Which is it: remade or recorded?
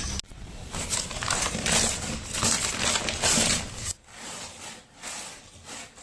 recorded